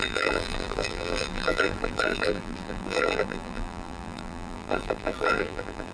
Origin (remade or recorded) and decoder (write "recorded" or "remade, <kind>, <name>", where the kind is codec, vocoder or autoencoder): remade, vocoder, BigVGAN v2